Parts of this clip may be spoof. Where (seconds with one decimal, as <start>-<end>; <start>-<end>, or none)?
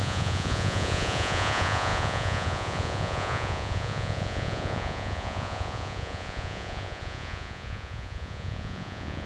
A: 0.0-9.3